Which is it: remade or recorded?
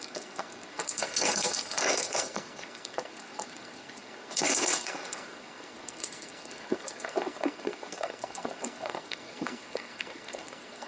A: remade